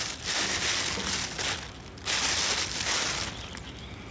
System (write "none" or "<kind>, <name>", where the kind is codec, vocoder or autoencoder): none